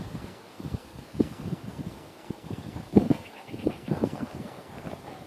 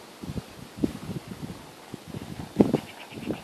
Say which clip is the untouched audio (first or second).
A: second